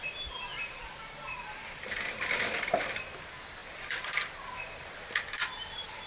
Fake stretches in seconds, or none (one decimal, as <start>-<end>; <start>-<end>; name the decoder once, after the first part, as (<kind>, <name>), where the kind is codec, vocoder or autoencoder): 0.5-2.9 (vocoder, BigVGAN v2)